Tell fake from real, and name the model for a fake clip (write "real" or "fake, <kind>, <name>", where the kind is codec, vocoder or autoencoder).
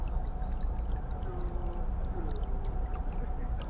real